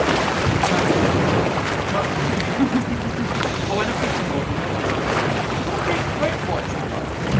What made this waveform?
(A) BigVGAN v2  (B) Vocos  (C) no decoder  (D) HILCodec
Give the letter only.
C